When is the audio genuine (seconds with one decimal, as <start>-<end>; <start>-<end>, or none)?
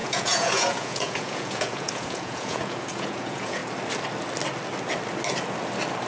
3.6-6.1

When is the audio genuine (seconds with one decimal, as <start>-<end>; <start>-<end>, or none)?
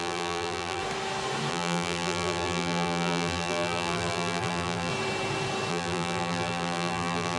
0.8-1.5; 4.9-5.7